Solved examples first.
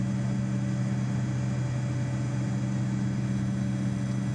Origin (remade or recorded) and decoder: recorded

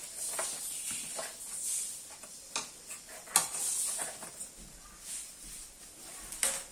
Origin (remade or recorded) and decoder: recorded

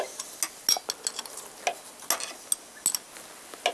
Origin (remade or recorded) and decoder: recorded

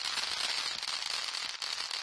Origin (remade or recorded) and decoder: recorded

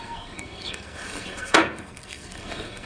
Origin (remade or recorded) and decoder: remade, codec, SNAC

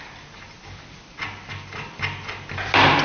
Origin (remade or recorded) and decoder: recorded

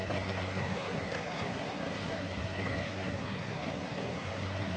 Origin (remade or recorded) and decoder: remade, codec, SNAC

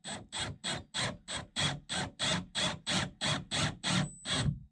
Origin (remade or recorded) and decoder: recorded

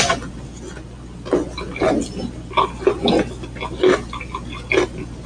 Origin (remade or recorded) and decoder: recorded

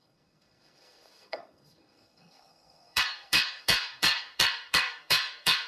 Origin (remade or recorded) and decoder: remade, codec, SNAC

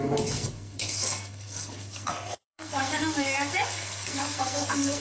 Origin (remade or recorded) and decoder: remade, codec, SNAC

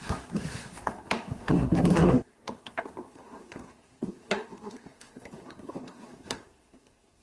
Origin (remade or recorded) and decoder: remade, codec, SNAC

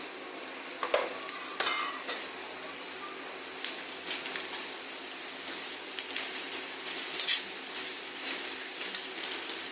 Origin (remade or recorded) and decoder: recorded